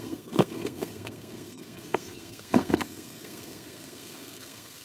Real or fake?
fake